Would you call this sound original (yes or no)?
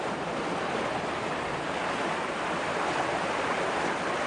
yes